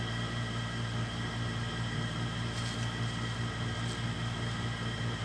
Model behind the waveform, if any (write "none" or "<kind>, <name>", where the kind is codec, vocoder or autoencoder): none